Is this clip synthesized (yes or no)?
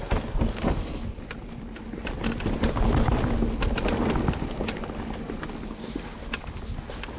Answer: no